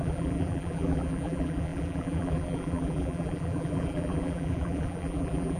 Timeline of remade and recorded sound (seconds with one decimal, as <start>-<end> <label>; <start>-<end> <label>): 0.0-5.6 remade